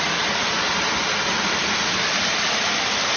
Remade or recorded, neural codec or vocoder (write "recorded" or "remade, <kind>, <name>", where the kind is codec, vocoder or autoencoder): recorded